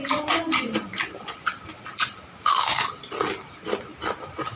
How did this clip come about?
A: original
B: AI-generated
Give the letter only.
A